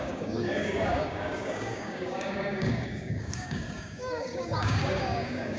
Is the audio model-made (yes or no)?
yes